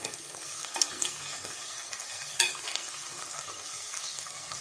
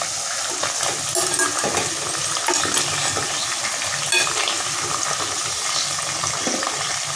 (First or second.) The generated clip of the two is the first